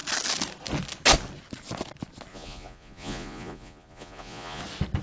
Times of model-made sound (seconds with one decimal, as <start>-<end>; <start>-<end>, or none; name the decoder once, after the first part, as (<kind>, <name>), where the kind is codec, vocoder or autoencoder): 2.3-4.6 (vocoder, Vocos)